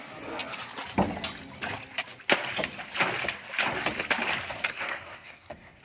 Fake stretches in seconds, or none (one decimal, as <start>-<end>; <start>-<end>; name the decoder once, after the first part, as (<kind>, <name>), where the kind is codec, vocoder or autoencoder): 4.7-5.8 (codec, SNAC)